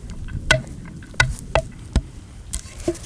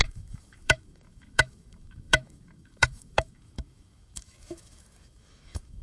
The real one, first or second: first